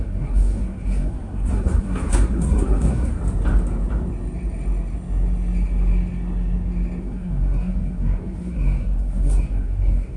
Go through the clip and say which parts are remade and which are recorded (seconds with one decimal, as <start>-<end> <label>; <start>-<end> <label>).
0.0-3.2 remade; 3.2-7.0 recorded; 7.0-10.2 remade